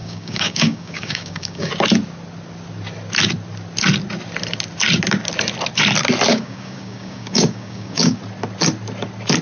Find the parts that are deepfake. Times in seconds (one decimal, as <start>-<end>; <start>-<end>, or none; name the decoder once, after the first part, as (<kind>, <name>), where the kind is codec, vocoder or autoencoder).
0.0-1.7 (codec, DAC); 6.3-8.2